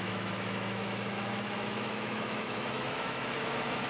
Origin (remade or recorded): remade